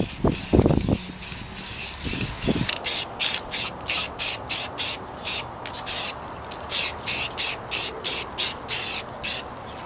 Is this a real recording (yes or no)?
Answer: yes